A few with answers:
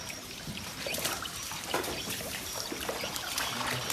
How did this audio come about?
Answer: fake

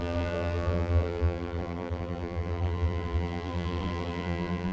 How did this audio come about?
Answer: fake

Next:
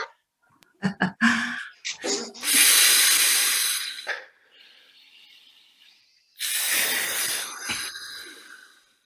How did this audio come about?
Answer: fake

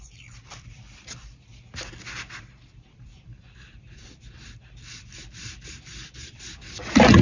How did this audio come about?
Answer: fake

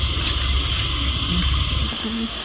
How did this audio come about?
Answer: real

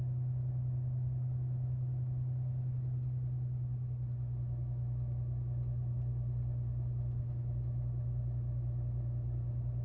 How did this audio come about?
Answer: real